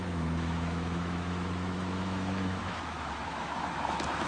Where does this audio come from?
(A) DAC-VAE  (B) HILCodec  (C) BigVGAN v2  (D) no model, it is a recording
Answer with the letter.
A